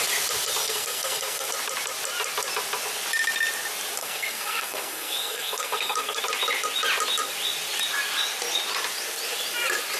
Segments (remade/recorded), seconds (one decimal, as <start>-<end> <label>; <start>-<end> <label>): 0.0-0.6 recorded; 0.6-1.5 remade; 1.5-4.0 recorded; 4.0-6.2 remade; 6.2-10.0 recorded